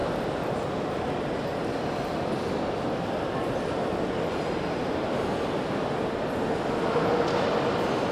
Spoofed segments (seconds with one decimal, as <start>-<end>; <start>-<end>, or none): none